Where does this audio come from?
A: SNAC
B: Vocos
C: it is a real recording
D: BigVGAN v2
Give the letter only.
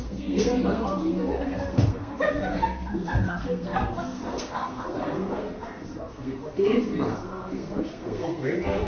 A